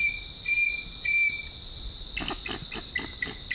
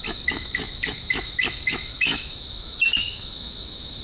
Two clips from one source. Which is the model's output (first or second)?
second